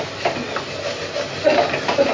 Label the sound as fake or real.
real